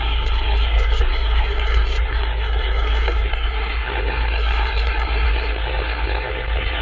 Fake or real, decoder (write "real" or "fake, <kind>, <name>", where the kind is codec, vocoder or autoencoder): fake, codec, SNAC